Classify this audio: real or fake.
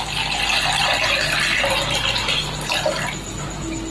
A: real